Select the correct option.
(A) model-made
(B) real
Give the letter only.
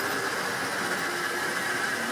B